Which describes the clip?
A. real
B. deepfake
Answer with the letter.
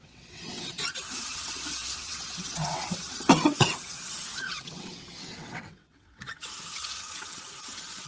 B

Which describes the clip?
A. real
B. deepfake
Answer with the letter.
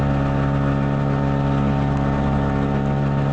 A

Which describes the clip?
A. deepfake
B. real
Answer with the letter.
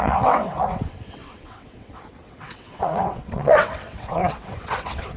A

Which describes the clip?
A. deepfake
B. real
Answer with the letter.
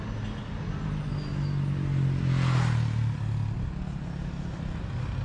B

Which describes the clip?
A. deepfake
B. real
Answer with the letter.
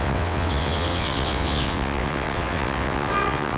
A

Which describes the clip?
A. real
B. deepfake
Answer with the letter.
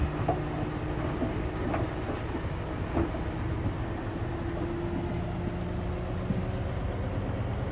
A